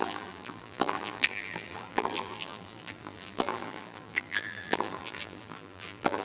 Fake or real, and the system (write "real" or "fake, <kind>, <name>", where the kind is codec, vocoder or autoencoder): fake, vocoder, BigVGAN v2